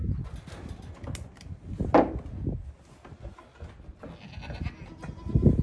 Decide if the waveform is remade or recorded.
recorded